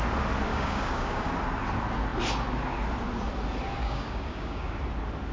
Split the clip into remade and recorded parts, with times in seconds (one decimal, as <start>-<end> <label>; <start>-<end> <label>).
0.0-0.5 recorded; 0.5-1.3 remade; 1.3-3.8 recorded; 3.8-4.7 remade; 4.7-5.3 recorded